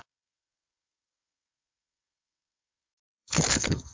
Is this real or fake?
fake